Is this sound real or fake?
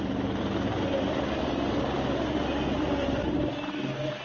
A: real